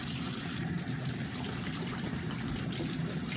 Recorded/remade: recorded